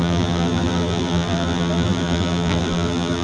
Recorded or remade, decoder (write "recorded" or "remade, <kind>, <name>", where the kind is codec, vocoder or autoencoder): remade, vocoder, BigVGAN v2